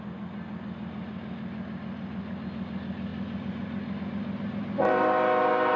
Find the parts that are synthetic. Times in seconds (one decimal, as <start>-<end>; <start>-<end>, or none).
none